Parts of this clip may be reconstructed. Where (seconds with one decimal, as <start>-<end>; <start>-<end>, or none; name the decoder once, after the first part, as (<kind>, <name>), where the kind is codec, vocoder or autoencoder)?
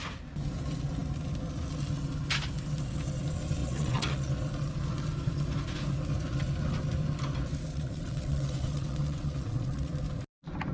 3.6-4.3 (vocoder, WaveNeXt); 7.7-9.9